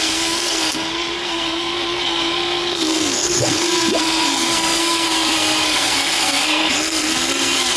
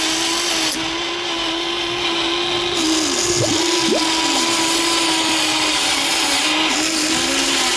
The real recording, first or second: second